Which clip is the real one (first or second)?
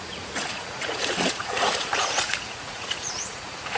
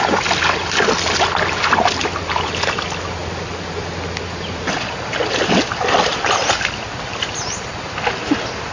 second